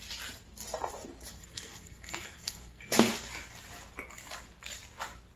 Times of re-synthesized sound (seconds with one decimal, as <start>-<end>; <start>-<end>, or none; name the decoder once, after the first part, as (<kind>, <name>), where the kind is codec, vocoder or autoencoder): 1.3-3.1 (codec, SNAC)